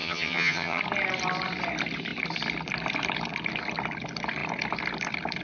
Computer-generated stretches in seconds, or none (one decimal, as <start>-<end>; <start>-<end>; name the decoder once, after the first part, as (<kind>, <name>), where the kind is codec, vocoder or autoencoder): 0.0-0.8 (vocoder, HiFi-GAN)